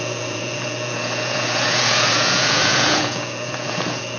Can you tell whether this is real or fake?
fake